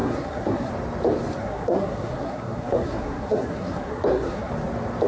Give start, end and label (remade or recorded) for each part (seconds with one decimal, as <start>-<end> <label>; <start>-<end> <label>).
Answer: 0.0-0.7 remade; 0.7-1.4 recorded; 1.4-4.5 remade; 4.5-5.1 recorded